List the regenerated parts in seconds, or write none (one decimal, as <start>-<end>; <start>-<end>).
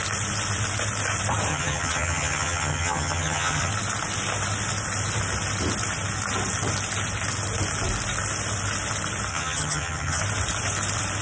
1.5-3.7; 9.3-10.2